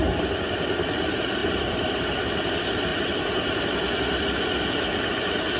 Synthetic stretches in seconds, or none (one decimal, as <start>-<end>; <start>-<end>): none